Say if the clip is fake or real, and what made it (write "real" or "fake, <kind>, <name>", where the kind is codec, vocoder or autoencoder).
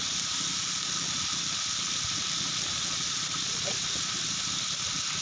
real